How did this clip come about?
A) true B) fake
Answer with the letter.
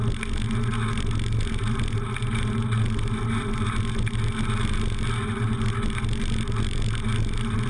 A